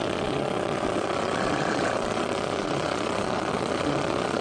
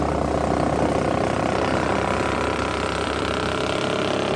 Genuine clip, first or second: second